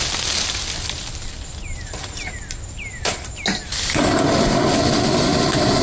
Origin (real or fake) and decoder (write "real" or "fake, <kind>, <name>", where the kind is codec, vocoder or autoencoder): real